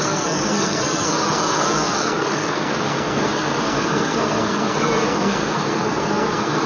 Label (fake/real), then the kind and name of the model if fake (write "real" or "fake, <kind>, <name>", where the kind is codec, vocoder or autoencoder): fake, codec, SNAC